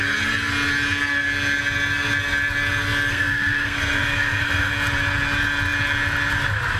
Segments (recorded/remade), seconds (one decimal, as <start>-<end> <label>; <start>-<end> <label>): 0.0-3.1 recorded; 3.1-4.7 remade; 4.7-6.8 recorded